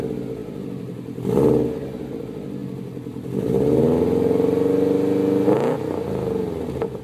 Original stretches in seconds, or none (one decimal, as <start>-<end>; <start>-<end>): 0.0-0.4; 1.3-7.0